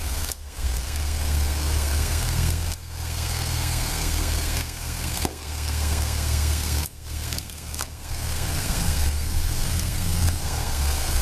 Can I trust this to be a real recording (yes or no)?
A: no